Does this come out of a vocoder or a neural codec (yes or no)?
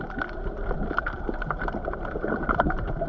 no